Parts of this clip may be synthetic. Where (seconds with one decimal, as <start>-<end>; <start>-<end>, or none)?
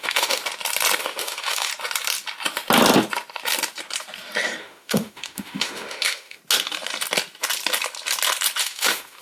0.0-0.4; 1.0-1.7; 4.6-6.4; 8.6-9.2